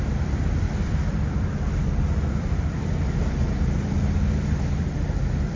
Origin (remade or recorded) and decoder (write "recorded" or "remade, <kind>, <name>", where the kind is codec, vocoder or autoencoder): remade, vocoder, BigVGAN v2